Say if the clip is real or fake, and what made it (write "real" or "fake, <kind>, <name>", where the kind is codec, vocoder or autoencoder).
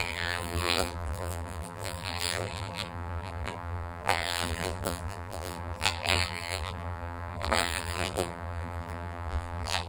fake, vocoder, BigVGAN v2